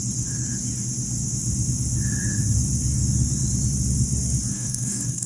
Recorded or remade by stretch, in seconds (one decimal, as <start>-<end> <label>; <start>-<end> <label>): 0.0-4.5 recorded; 4.5-5.3 remade